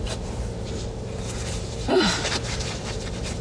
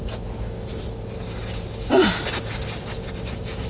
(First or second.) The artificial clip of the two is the first